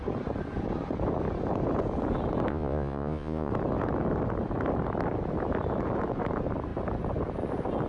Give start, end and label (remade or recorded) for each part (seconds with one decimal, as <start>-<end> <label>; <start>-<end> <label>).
0.0-2.5 recorded; 2.5-3.5 remade; 3.5-7.9 recorded